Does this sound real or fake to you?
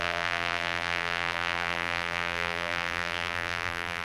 fake